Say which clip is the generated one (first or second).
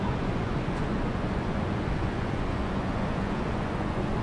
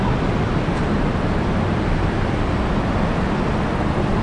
first